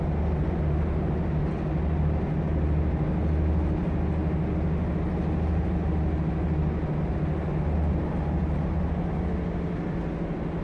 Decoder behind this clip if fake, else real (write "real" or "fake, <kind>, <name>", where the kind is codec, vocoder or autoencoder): real